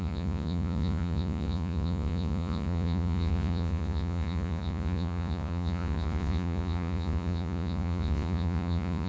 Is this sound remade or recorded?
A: remade